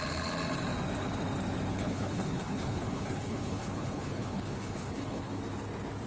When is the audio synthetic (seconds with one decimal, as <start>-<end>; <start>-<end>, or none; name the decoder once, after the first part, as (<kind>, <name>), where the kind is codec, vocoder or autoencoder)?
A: 1.7-5.4 (codec, HILCodec)